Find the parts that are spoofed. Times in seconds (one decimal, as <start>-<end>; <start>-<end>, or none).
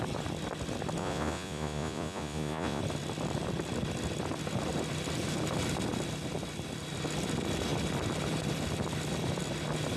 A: 1.0-2.8